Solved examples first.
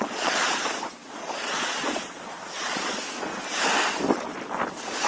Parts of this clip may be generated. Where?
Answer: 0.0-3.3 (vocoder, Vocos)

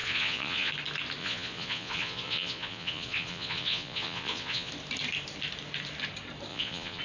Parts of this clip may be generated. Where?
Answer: 0.0-0.7 (vocoder, Vocos); 1.2-4.7; 6.5-7.0